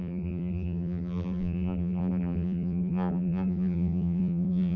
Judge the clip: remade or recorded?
remade